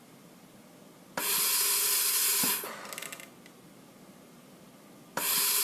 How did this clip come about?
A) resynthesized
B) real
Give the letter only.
B